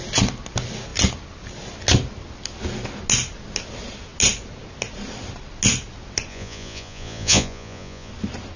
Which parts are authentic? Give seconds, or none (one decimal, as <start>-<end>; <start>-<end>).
0.0-6.3; 8.1-8.6